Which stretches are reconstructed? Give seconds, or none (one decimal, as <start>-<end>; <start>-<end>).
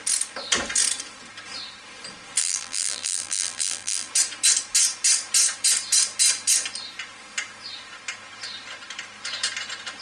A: 2.4-4.1